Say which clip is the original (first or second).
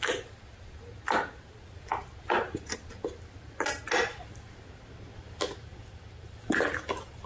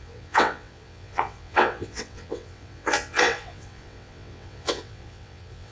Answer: first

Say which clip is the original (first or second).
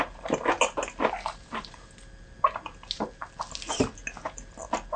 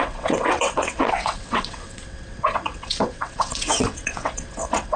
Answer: first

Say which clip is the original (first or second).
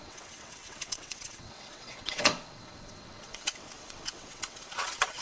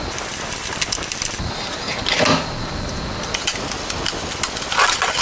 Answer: second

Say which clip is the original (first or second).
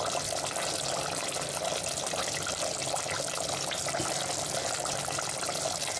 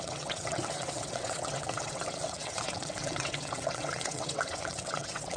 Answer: first